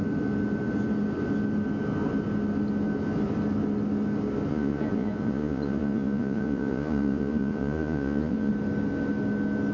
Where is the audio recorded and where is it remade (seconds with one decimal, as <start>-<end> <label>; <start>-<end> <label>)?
0.0-4.5 recorded; 4.5-8.5 remade; 8.5-9.7 recorded